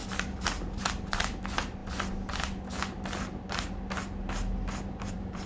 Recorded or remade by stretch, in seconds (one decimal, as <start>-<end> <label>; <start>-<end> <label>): 0.0-1.8 remade; 1.8-5.1 recorded; 5.1-5.5 remade